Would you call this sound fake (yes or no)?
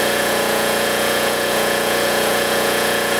yes